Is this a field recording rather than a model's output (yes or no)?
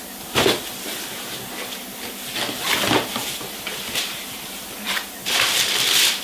yes